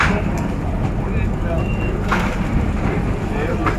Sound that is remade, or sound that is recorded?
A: recorded